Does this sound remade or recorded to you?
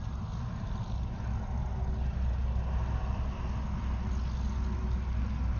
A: recorded